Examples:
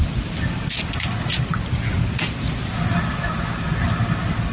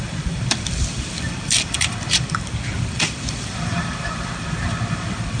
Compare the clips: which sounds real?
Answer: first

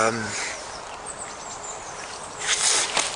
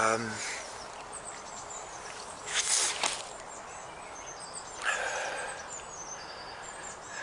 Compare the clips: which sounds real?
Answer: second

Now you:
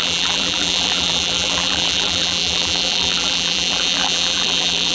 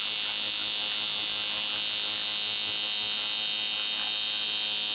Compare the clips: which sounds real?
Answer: second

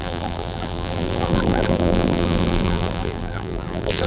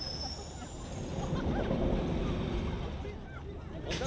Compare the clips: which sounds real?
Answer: second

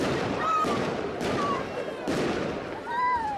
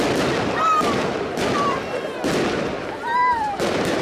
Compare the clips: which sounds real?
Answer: second